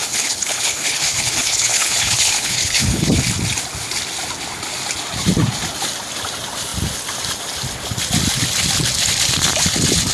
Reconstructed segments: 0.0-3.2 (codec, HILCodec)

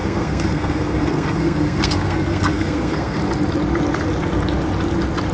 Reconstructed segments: 0.0-3.2 (codec, SNAC)

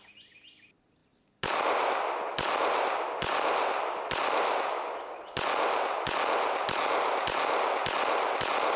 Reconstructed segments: none

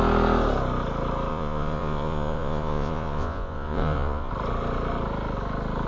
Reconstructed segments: 1.3-4.3 (vocoder, Vocos)

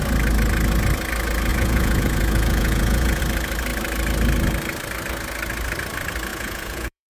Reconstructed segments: 1.5-3.2 (vocoder, Vocos); 6.3-7.2

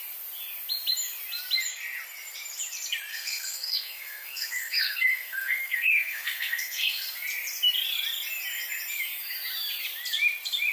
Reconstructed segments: 3.1-7.0 (codec, SNAC)

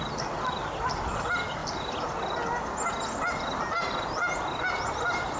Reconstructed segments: none